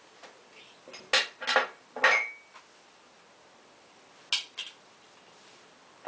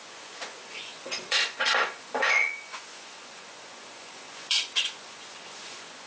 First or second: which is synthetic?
second